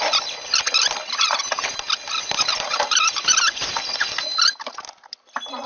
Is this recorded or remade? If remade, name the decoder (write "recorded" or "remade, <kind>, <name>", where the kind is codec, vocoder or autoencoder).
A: recorded